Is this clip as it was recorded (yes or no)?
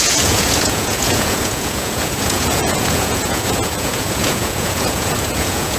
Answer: no